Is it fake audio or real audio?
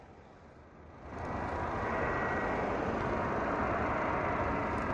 real